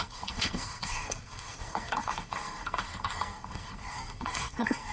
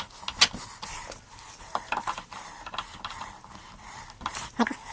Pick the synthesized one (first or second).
first